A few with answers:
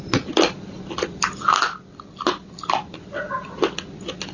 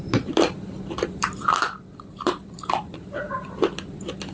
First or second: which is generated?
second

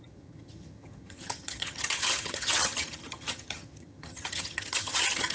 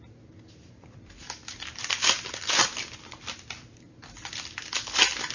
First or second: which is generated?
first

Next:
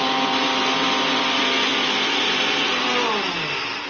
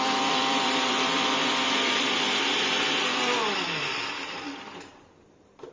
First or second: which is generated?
second